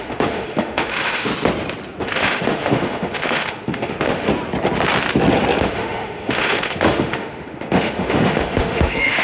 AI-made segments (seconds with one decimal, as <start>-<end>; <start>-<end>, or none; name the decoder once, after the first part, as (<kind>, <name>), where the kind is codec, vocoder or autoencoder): 0.0-1.3 (autoencoder, DAC-VAE); 2.0-4.3; 5.6-9.2

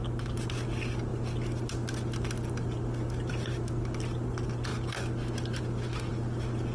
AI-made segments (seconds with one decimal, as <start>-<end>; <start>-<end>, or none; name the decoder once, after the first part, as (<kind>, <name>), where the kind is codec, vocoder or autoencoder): none